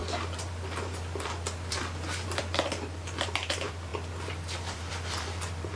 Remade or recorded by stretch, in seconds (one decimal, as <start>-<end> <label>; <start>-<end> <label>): 0.0-5.8 remade